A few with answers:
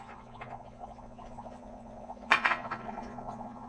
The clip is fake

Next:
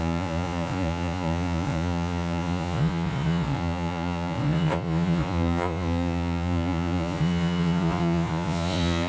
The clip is fake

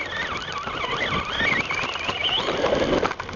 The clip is real